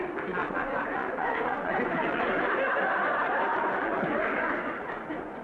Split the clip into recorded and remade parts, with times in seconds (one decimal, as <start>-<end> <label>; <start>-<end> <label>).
0.0-0.4 recorded; 0.4-2.2 remade; 2.2-3.5 recorded; 3.5-5.4 remade